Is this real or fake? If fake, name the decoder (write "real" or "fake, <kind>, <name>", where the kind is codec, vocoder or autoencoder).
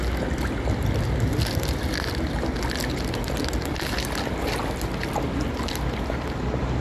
real